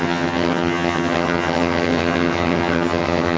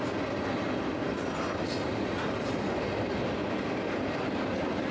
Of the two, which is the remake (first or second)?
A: first